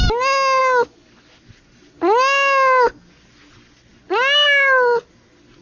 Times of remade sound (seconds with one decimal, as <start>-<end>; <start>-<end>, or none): none